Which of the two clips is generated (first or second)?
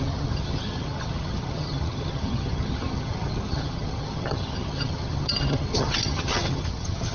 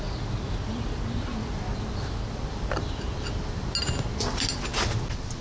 first